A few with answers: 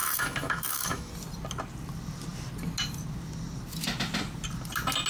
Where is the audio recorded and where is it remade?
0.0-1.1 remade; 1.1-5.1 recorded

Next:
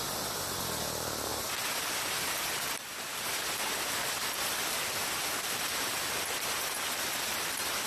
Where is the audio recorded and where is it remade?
0.0-7.9 recorded

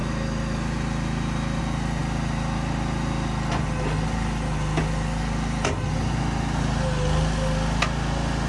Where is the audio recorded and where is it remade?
0.0-8.5 recorded